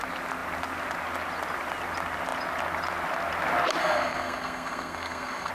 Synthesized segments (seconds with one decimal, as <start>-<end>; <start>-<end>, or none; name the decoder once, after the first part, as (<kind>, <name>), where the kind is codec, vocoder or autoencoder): 3.8-5.5 (codec, SNAC)